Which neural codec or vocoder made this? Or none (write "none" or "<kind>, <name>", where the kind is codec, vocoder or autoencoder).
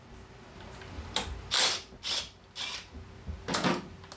none